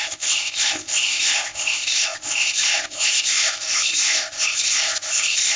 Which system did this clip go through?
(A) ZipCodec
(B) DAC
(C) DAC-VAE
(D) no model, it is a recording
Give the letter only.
A